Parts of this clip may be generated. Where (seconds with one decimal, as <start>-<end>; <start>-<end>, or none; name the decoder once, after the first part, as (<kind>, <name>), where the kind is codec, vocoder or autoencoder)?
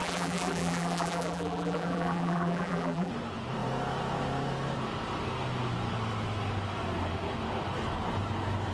0.0-3.1 (vocoder, BigVGAN v2)